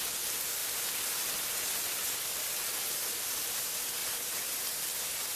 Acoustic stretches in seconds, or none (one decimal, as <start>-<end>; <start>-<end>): 0.0-0.6; 3.2-4.0; 4.6-5.4